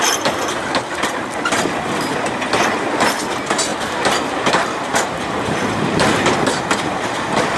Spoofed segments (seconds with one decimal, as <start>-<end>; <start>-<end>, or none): 3.7-6.6